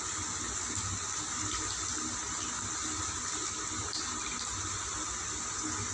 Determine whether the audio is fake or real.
real